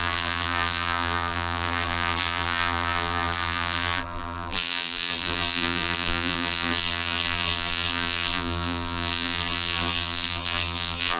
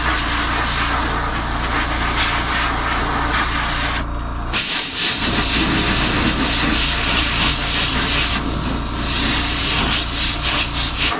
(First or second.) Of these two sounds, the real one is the second